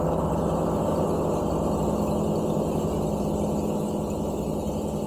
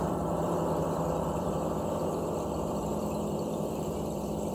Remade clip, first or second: second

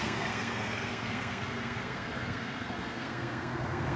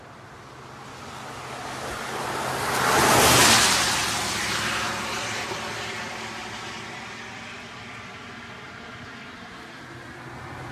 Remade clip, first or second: first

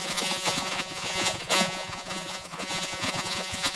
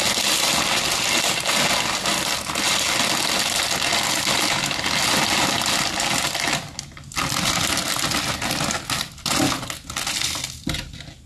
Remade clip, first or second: first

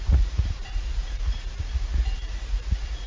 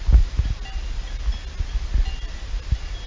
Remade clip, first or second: first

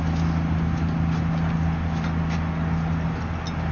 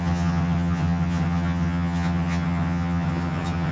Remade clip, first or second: second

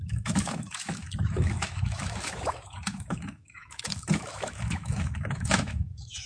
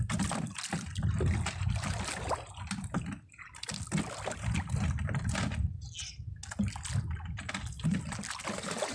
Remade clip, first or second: first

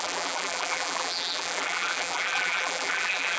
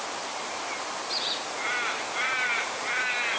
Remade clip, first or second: first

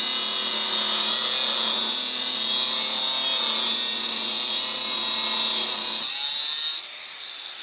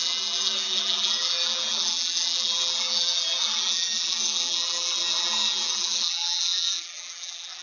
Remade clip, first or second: second